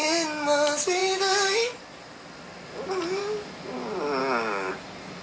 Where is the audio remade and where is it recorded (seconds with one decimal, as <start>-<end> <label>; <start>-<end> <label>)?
0.0-4.2 recorded; 4.2-4.7 remade; 4.7-5.2 recorded